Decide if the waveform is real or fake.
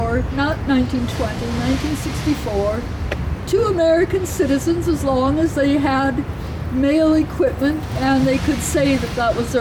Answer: real